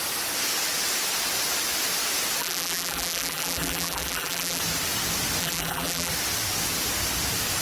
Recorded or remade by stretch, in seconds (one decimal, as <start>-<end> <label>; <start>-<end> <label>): 0.0-2.4 recorded; 2.4-4.6 remade; 4.6-5.4 recorded; 5.4-6.1 remade; 6.1-7.6 recorded